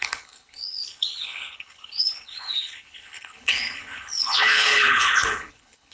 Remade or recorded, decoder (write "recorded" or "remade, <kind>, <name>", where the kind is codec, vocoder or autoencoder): remade, codec, HILCodec